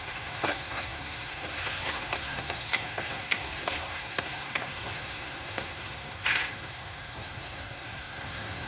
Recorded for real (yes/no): no